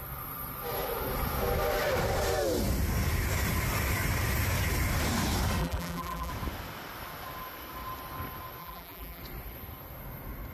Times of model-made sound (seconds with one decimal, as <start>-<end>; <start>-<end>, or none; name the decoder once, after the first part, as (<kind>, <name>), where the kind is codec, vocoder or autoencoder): 5.6-6.3 (vocoder, BigVGAN v2); 8.6-9.2